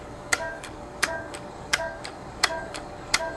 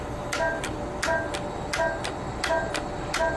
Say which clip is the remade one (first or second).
first